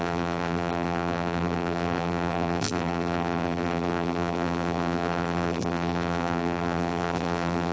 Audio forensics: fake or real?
fake